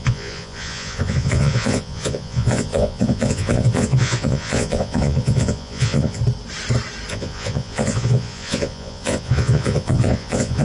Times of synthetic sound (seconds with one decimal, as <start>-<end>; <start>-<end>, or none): 0.0-6.2; 7.1-10.6